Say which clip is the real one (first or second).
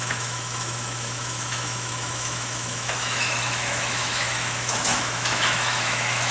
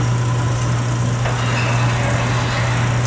second